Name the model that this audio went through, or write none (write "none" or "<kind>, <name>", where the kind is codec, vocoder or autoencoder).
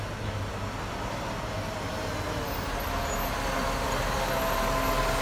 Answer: none